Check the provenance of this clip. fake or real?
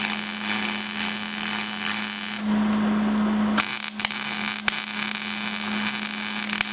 real